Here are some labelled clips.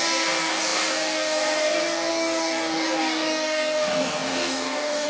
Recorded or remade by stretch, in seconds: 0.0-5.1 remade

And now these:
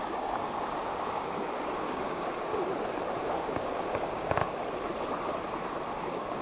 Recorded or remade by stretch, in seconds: 0.0-2.5 remade; 2.5-3.2 recorded; 3.2-4.4 remade; 4.4-6.0 recorded; 6.0-6.4 remade

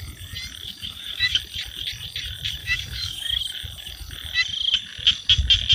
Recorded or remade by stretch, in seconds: 0.0-0.6 recorded; 0.6-1.4 remade; 1.4-2.6 recorded; 2.6-3.4 remade; 3.4-5.7 recorded

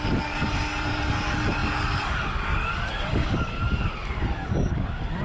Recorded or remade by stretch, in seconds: 0.0-0.4 remade; 0.4-0.9 recorded; 0.9-5.2 remade

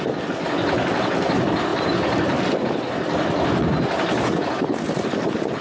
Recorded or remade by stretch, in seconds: 0.0-5.6 recorded